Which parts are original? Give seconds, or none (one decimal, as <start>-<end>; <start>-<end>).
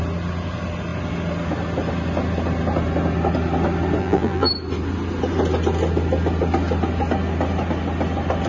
0.0-4.0; 4.5-8.5